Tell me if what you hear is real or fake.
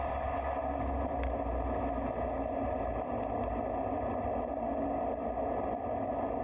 real